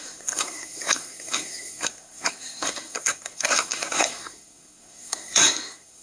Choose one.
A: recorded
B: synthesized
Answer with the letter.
B